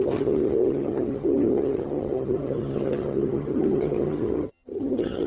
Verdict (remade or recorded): remade